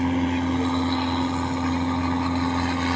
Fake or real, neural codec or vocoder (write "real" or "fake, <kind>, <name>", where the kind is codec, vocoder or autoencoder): real